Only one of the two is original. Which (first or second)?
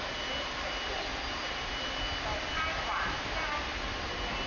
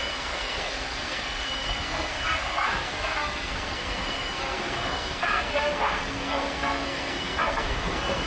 first